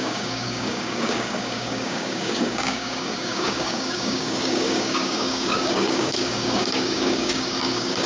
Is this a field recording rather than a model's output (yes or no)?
no